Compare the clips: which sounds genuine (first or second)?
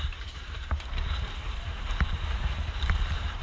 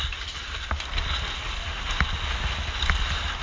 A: second